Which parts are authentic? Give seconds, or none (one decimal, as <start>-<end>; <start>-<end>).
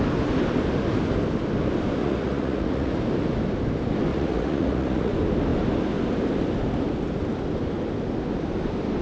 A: 0.0-2.0; 2.9-4.1; 5.1-9.0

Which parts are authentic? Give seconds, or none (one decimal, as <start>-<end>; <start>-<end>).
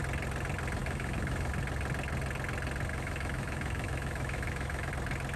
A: 0.0-0.8; 1.5-2.9; 4.9-5.4